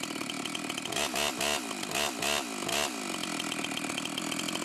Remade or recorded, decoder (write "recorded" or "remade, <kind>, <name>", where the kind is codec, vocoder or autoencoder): recorded